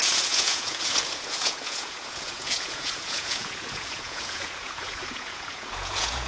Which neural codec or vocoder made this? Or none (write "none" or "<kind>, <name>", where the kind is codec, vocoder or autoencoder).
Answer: vocoder, Vocos